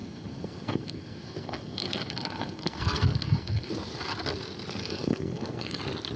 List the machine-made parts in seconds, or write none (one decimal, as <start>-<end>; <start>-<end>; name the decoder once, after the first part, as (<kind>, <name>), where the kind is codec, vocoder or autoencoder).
0.0-3.7 (codec, SNAC); 4.8-5.8

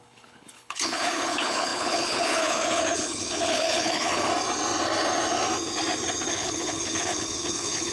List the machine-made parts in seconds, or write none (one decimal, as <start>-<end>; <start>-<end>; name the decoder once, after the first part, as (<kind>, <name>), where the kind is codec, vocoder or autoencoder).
0.0-4.3 (codec, HILCodec); 6.3-7.9

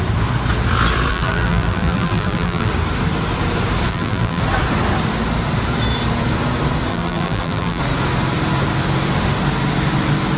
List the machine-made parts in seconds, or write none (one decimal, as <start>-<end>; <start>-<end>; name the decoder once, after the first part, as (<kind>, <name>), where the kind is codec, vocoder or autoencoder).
1.1-2.7 (vocoder, BigVGAN v2); 3.9-4.4; 6.9-7.8

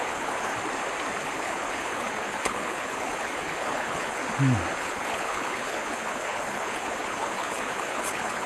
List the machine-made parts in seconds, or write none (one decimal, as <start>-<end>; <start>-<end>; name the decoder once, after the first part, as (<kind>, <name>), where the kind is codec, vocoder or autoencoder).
0.0-0.5 (codec, HILCodec); 1.2-4.2; 4.8-8.5